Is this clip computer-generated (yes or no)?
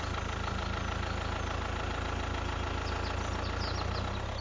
no